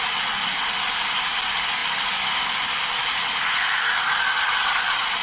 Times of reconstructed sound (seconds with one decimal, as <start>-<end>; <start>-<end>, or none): none